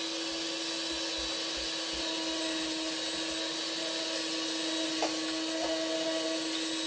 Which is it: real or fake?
real